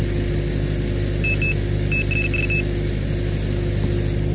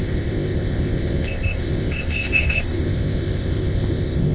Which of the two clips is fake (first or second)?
second